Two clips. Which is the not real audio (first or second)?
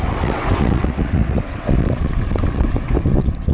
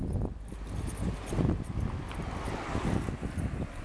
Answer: first